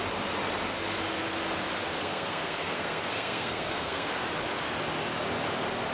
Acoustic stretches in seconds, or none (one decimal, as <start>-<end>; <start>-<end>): 0.0-2.0; 4.1-5.9